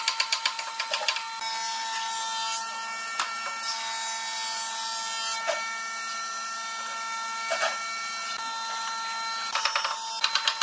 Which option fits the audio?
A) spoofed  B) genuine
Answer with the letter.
B